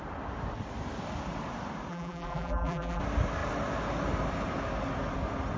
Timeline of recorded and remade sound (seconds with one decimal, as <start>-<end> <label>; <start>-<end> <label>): 0.0-1.9 recorded; 1.9-3.0 remade; 3.0-5.6 recorded